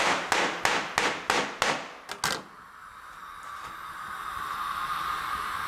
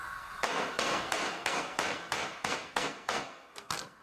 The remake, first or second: second